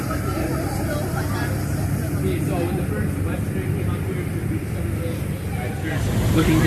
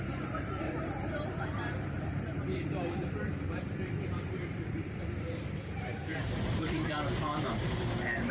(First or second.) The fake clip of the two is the second